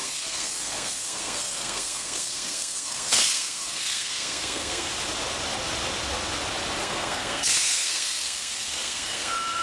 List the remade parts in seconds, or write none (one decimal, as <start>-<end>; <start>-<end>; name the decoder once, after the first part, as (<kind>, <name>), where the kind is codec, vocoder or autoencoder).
0.0-4.9 (codec, SNAC); 6.8-9.6